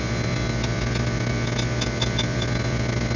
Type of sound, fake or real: real